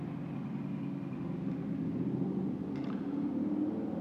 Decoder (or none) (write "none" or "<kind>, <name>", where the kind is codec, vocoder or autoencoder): none